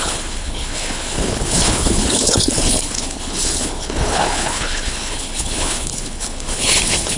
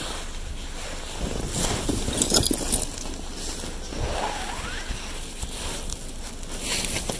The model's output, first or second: first